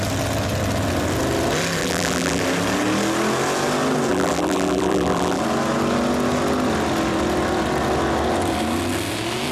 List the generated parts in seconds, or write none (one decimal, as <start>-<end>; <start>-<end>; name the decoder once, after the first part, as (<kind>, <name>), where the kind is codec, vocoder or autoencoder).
1.8-2.4 (vocoder, BigVGAN v2); 4.1-5.4